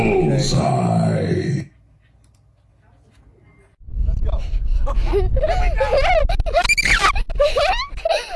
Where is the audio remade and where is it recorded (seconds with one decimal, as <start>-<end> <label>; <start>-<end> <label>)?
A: 0.0-8.4 recorded